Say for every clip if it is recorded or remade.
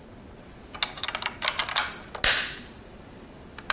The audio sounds recorded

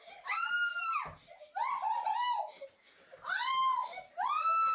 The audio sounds recorded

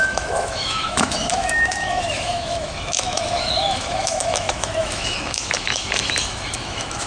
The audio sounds remade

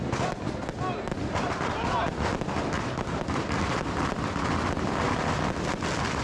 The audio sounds recorded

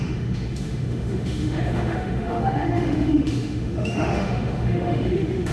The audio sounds remade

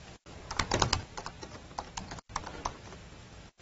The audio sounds recorded